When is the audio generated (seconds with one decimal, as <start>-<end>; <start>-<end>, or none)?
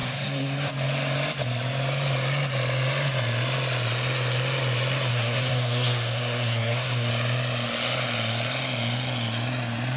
0.0-0.7; 5.1-7.1